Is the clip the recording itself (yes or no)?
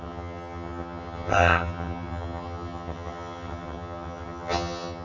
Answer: no